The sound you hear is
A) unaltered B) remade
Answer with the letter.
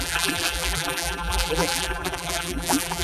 B